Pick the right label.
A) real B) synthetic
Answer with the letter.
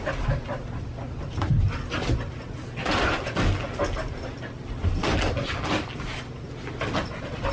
A